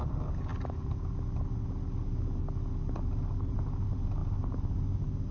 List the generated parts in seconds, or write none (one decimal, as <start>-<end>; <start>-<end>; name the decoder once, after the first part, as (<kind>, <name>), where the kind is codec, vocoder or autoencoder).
none